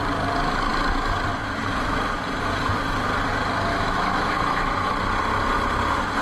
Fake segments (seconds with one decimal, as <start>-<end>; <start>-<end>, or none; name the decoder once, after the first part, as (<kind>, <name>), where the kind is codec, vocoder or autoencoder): 3.7-4.9 (autoencoder, DAC-VAE)